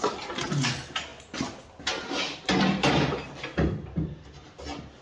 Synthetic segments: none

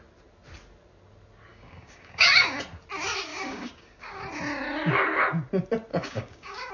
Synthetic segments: 1.5-2.6 (codec, DAC); 3.3-4.2; 5.9-6.7

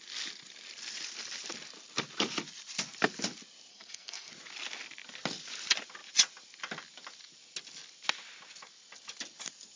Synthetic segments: 3.7-4.3 (codec, SNAC)

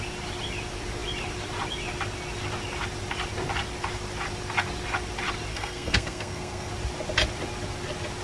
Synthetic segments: 5.5-6.7 (codec, SNAC)

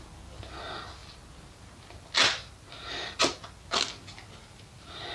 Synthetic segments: none